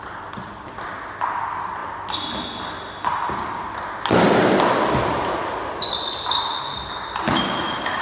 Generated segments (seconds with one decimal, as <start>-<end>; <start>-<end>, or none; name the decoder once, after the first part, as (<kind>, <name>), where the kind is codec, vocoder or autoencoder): none